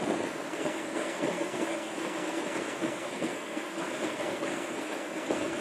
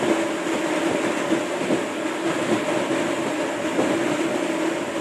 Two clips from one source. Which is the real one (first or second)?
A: second